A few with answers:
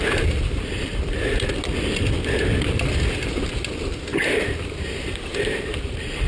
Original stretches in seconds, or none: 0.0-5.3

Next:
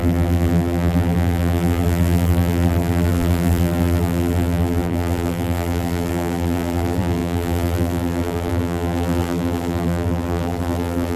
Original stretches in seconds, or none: none